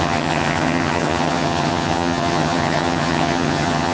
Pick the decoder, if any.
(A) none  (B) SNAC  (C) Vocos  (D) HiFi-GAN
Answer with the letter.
D